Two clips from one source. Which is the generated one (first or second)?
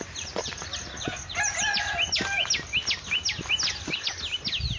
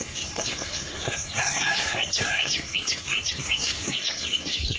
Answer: second